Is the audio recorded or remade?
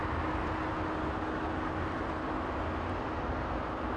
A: recorded